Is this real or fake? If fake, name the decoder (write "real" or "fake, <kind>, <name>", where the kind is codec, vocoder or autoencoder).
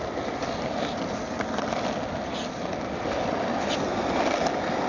real